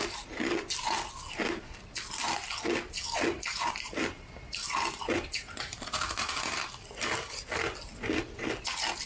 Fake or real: real